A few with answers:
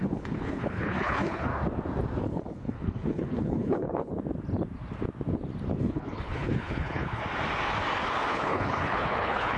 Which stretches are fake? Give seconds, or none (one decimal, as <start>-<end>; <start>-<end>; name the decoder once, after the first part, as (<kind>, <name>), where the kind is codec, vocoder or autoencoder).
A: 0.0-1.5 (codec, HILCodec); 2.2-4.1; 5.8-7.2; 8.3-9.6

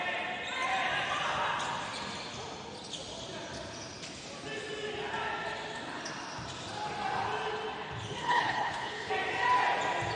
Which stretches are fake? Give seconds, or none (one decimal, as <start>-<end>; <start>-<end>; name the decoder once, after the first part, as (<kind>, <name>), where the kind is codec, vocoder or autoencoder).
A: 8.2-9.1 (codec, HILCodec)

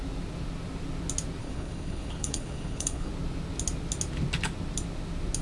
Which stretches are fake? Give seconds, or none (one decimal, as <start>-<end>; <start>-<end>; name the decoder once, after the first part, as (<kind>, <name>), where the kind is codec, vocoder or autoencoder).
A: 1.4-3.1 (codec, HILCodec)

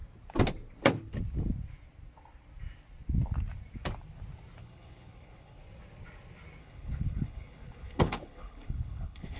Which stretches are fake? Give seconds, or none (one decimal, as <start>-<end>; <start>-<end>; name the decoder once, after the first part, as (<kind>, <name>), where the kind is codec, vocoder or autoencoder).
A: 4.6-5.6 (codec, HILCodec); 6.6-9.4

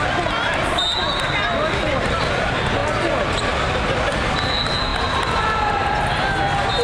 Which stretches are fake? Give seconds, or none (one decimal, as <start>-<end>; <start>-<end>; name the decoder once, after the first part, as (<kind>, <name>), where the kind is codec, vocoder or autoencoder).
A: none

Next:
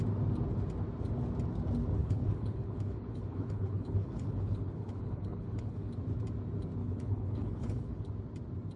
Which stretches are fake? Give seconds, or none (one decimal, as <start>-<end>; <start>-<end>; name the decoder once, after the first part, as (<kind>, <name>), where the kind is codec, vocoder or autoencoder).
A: 2.0-5.9 (codec, HILCodec); 6.8-8.1